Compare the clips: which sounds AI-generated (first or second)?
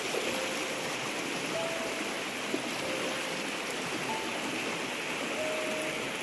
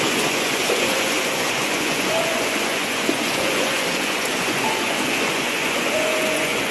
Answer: second